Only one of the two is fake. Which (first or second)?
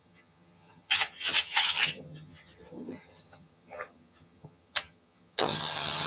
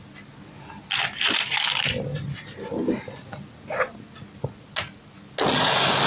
first